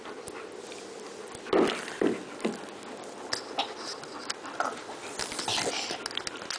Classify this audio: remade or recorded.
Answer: recorded